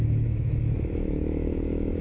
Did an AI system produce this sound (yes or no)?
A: yes